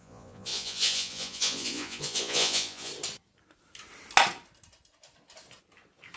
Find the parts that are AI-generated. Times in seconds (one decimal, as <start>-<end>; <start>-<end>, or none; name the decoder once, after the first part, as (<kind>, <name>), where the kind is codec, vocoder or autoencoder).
0.0-2.9 (vocoder, Vocos)